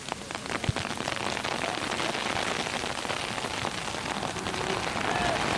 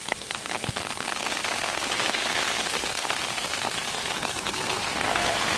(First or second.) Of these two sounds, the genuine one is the first